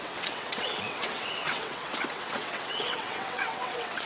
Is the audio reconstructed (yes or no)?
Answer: yes